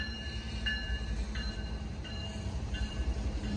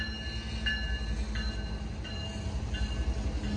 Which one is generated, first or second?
first